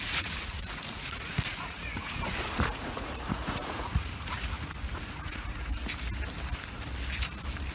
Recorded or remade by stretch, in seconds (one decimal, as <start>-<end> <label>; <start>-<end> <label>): 0.0-4.7 remade; 4.7-5.3 recorded; 5.3-5.8 remade; 5.8-7.7 recorded